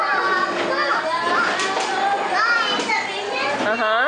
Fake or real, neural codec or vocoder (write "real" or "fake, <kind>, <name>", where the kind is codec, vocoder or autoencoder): real